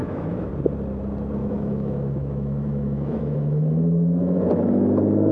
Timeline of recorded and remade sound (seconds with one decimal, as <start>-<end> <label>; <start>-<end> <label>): 0.0-0.5 remade; 0.5-1.4 recorded; 1.4-4.5 remade; 4.5-5.3 recorded